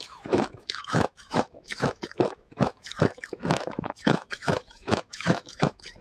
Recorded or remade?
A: remade